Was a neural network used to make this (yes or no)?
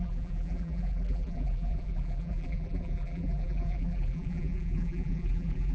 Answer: yes